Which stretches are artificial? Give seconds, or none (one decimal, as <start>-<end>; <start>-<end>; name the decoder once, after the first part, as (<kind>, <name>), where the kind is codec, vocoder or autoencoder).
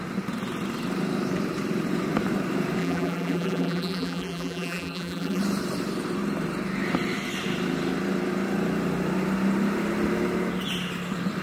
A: 2.8-5.4 (vocoder, BigVGAN v2)